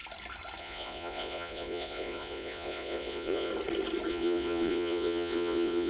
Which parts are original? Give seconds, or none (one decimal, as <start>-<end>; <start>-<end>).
0.0-0.6; 3.5-4.1